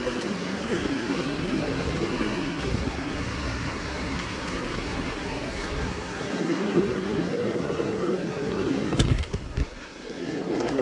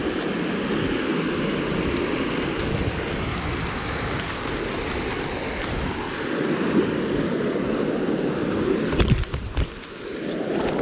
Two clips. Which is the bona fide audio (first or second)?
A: second